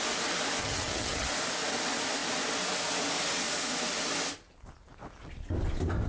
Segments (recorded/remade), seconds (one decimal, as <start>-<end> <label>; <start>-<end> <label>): 0.0-0.6 recorded; 0.6-1.3 remade; 1.3-6.1 recorded